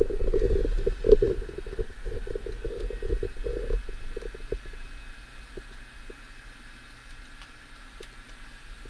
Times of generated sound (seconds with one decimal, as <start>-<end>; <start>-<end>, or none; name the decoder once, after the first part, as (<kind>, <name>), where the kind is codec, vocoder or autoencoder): 7.0-8.2 (vocoder, BigVGAN v2)